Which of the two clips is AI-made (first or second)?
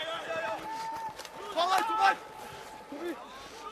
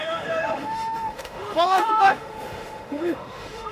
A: second